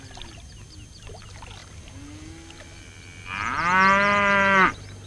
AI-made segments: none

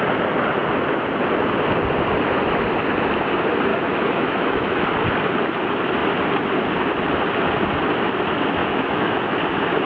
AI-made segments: 3.7-4.8; 8.6-9.4